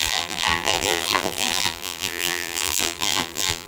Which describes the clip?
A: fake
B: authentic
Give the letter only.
A